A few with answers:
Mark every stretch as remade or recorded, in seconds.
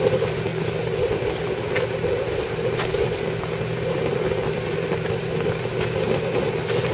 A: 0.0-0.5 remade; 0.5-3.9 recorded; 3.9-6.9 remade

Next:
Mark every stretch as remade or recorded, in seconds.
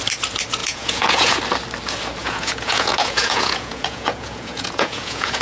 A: 0.0-0.6 recorded; 0.6-1.4 remade; 1.4-2.2 recorded; 2.2-5.4 remade